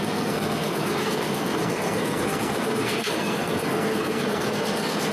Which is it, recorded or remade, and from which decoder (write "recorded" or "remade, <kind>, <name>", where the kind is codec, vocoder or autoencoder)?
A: remade, codec, SNAC